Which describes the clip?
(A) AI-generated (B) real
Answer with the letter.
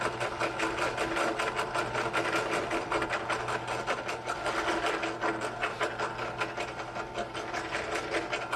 B